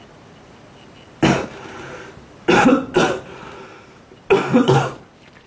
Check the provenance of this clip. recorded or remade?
recorded